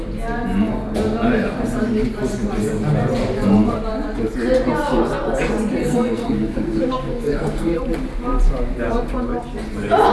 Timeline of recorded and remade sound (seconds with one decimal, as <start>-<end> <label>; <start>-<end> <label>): 0.0-5.8 recorded; 5.8-7.8 remade; 7.8-10.1 recorded